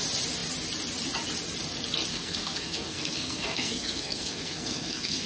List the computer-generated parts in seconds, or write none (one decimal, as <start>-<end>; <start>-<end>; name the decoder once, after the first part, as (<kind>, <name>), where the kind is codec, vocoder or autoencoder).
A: 2.1-5.3 (codec, SNAC)